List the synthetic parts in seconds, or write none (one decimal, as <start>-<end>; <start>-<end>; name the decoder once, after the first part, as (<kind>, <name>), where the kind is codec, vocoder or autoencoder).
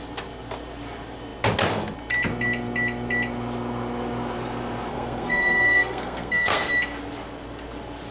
4.9-6.7 (codec, SNAC)